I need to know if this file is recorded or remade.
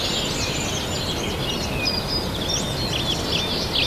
recorded